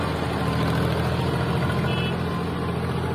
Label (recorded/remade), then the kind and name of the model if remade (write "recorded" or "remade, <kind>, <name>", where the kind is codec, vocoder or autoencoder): recorded